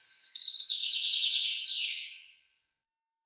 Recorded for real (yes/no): no